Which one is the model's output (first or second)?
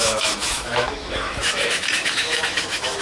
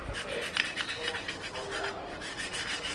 first